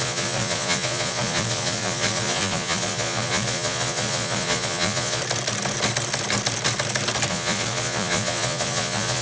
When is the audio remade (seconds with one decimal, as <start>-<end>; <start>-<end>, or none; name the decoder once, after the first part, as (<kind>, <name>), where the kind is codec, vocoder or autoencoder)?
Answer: 0.0-5.2 (vocoder, Vocos); 7.3-9.2